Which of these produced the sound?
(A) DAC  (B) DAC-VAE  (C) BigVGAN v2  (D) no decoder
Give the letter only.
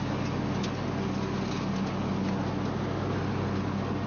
D